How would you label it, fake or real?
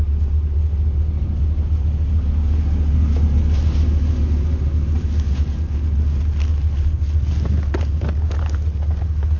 real